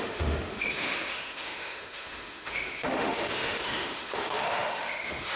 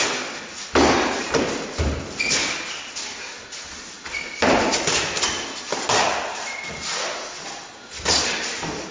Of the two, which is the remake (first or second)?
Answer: first